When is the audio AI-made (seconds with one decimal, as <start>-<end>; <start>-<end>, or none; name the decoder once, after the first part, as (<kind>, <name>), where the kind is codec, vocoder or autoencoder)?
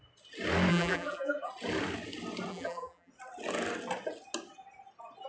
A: 0.7-1.5 (vocoder, BigVGAN v2); 2.5-3.1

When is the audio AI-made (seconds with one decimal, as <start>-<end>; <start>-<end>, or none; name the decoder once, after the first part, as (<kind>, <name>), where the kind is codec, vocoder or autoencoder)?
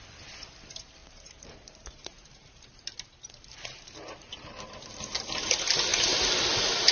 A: 1.0-4.9 (vocoder, BigVGAN v2)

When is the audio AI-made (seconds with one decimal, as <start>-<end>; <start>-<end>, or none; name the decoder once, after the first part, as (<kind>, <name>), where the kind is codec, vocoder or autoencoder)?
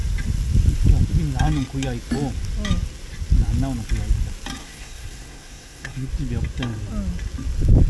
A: 4.6-6.1 (codec, SNAC)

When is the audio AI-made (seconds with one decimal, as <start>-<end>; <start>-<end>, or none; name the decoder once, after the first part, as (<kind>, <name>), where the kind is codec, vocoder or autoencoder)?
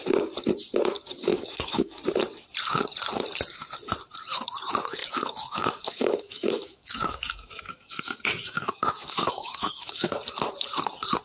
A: 1.2-2.0 (autoencoder, DAC-VAE); 5.0-10.1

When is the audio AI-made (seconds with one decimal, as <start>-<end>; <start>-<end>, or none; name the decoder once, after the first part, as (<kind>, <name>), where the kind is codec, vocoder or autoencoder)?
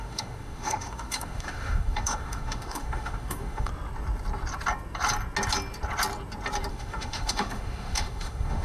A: 0.0-3.7 (autoencoder, DAC-VAE); 6.7-8.6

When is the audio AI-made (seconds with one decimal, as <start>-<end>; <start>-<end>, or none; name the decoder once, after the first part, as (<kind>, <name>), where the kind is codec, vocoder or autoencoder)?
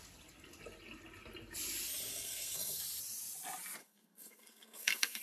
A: 2.1-2.8 (codec, SNAC); 3.8-5.2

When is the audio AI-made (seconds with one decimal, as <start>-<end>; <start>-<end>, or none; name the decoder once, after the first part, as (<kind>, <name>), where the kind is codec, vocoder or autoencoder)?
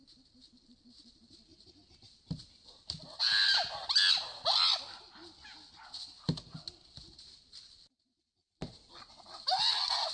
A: none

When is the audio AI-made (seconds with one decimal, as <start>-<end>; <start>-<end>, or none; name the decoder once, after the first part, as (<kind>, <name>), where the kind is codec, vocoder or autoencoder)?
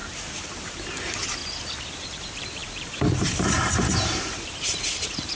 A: 1.0-1.4 (vocoder, BigVGAN v2); 1.9-5.3